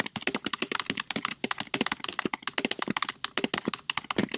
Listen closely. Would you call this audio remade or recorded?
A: recorded